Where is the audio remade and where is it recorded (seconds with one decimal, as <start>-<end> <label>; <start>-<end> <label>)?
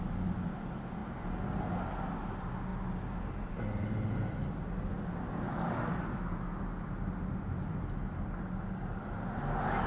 0.0-9.9 recorded